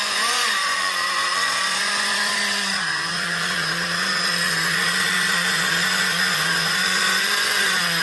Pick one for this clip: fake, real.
fake